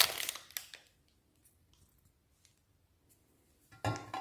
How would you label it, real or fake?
real